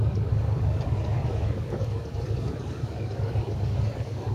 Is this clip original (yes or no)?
no